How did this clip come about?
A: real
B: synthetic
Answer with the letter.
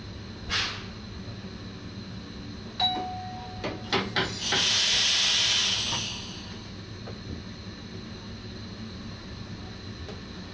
A